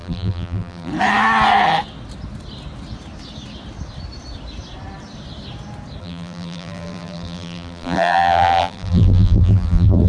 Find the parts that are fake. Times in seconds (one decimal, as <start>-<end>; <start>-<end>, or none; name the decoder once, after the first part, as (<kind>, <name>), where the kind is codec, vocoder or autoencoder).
0.0-0.9 (vocoder, BigVGAN v2); 6.0-10.1